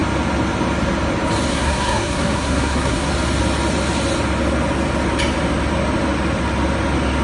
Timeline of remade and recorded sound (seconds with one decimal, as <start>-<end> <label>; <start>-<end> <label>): 0.0-1.5 recorded; 1.5-3.1 remade; 3.1-7.2 recorded